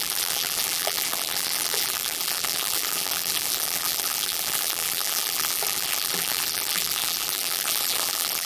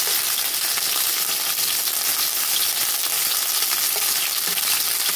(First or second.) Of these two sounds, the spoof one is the first